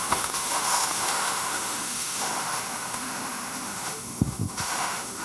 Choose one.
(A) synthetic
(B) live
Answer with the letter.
A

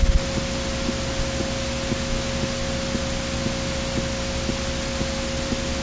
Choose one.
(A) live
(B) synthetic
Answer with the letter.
A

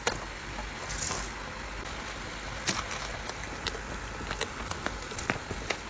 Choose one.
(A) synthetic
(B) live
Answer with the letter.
B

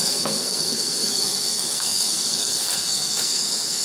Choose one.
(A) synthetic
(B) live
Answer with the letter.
A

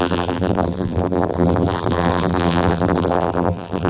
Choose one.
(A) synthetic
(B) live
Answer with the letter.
A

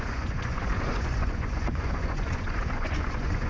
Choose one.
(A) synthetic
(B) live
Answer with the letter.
A